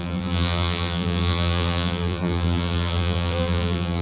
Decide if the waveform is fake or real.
fake